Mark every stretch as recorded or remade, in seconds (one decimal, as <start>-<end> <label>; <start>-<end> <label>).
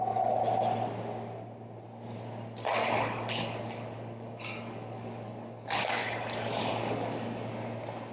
0.0-2.8 recorded; 2.8-7.5 remade; 7.5-8.1 recorded